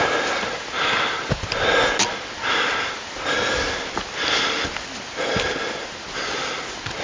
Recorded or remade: recorded